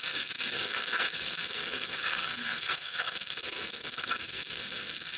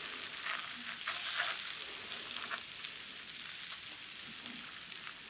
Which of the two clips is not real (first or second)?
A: first